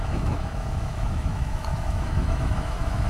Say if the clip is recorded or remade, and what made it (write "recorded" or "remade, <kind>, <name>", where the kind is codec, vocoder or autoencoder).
remade, autoencoder, DAC-VAE